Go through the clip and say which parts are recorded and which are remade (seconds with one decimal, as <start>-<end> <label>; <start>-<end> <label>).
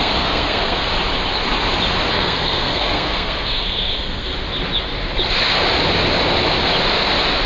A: 0.0-0.8 remade; 0.8-2.1 recorded; 2.1-4.3 remade; 4.3-7.5 recorded